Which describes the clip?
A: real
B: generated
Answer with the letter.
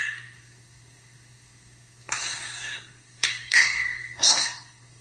B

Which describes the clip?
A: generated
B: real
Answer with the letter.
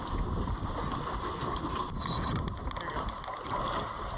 B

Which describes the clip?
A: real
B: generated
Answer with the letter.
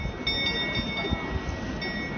A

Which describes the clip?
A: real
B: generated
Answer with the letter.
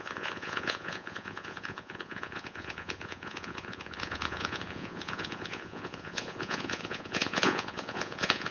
B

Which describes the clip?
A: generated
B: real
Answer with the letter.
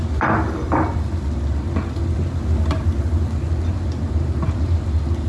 B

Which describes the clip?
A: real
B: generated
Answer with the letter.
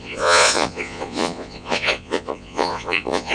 B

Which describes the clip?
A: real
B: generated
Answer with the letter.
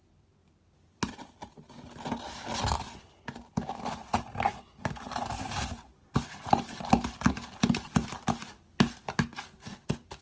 A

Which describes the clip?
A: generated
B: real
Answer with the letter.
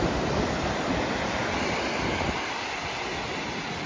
B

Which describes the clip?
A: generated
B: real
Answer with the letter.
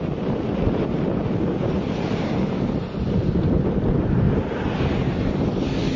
B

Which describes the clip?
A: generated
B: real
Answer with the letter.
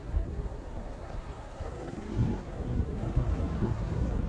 A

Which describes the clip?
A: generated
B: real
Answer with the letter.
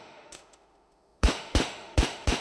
A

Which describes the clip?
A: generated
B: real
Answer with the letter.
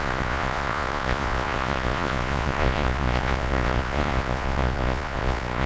A